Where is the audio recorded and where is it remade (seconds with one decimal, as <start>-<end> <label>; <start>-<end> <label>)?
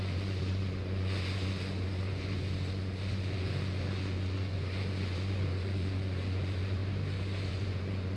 0.0-6.8 remade; 6.8-7.5 recorded; 7.5-8.2 remade